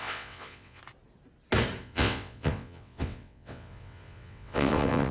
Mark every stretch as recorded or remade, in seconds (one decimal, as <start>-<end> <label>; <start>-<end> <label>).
0.0-0.8 remade; 0.8-1.8 recorded; 1.8-5.1 remade